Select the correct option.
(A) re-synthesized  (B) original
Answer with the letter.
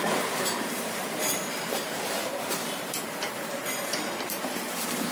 A